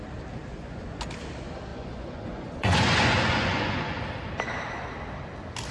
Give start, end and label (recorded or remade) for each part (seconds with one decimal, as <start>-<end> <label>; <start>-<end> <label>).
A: 0.0-0.5 recorded; 0.5-1.0 remade; 1.0-1.7 recorded; 1.7-4.0 remade; 4.0-5.7 recorded